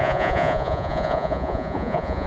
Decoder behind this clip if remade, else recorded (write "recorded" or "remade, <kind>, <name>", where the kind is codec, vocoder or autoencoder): remade, vocoder, Vocos